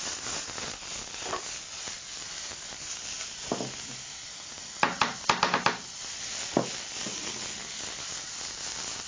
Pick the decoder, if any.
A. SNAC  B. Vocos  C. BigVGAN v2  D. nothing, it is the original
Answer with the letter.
D